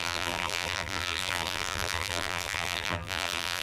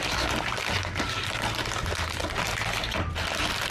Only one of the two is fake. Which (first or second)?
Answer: first